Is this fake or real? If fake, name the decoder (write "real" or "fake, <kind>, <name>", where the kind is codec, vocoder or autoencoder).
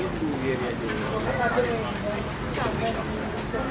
real